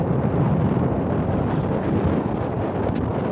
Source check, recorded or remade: recorded